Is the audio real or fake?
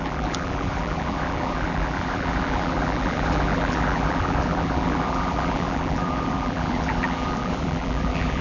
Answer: fake